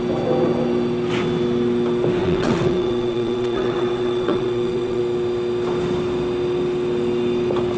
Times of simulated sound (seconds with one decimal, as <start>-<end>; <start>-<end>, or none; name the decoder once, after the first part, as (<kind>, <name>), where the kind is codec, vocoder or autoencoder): 2.2-5.0 (vocoder, WaveNeXt)